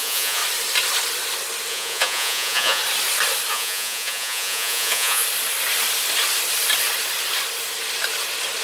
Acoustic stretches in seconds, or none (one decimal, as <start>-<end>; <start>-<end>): 0.4-1.7; 2.8-3.5; 5.2-8.6